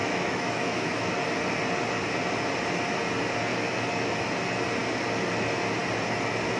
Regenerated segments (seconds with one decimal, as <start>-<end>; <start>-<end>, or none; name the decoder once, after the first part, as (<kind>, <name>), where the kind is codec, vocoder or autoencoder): 0.0-1.1 (autoencoder, DAC-VAE); 3.5-4.1